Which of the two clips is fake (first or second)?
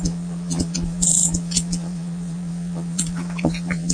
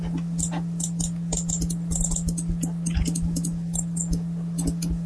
first